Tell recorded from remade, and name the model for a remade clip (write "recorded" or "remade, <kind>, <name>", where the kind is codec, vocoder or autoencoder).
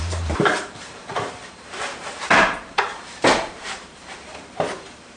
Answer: remade, vocoder, BigVGAN v2